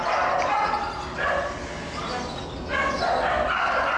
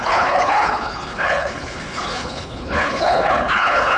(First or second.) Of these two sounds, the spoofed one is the second